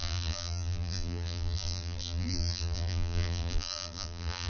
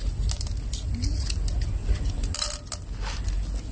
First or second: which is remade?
first